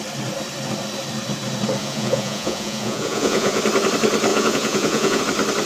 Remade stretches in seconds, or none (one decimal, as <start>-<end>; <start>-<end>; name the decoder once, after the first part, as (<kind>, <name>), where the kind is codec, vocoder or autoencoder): 1.8-3.6 (vocoder, Vocos); 4.3-5.2